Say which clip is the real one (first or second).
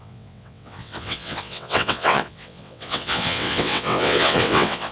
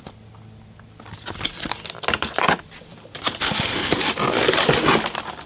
second